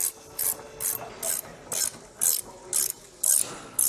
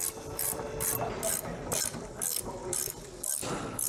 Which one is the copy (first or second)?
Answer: second